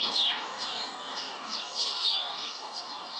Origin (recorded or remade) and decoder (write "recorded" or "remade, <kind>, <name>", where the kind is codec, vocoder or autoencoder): remade, codec, DAC